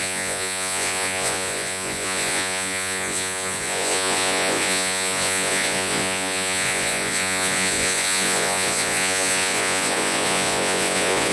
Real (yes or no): no